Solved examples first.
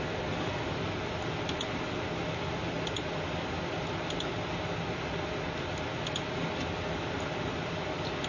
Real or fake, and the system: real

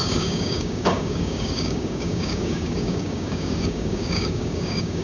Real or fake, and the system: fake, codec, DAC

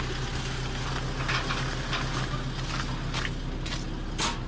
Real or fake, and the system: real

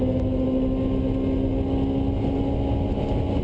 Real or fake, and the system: real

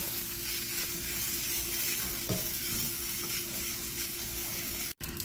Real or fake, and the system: fake, codec, DAC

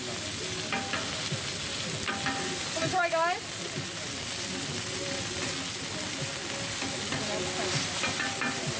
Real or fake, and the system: real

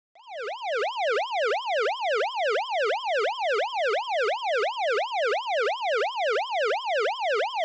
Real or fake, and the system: real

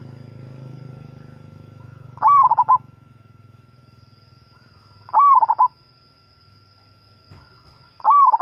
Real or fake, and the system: fake, codec, DAC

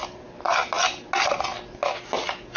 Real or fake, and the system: real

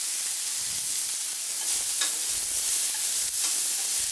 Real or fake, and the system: real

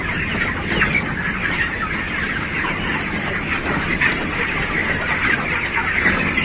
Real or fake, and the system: real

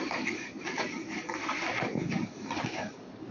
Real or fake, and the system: fake, codec, DAC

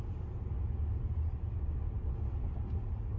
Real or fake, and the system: real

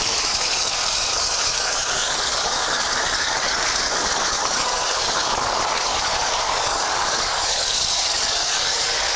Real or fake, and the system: fake, codec, DAC